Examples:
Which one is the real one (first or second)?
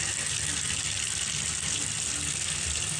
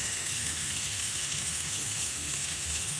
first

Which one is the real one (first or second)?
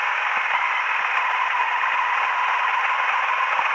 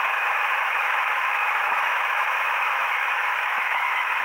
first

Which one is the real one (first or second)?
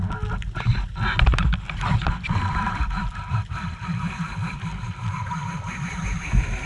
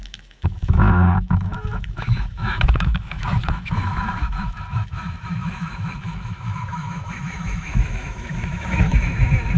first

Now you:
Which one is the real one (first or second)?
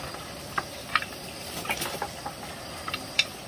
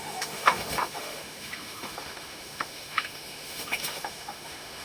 first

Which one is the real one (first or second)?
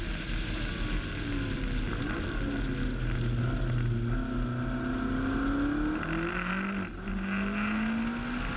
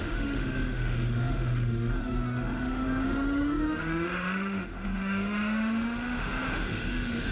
first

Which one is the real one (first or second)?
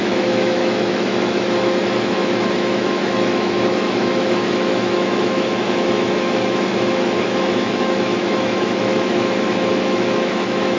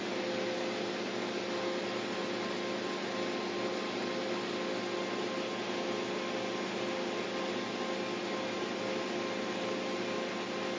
second